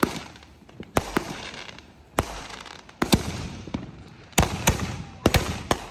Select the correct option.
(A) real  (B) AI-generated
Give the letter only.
B